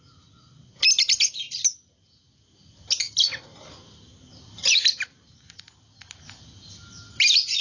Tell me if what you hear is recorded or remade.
recorded